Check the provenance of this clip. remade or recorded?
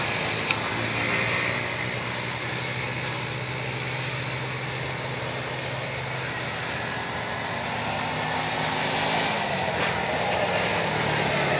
recorded